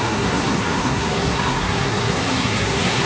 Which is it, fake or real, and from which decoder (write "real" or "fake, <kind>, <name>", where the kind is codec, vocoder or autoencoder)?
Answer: fake, codec, SNAC